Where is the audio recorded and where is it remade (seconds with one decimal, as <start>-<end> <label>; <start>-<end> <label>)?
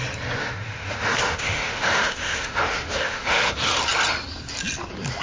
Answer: 0.0-0.4 recorded; 0.4-3.5 remade; 3.5-5.2 recorded